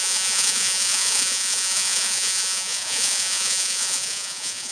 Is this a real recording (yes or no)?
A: no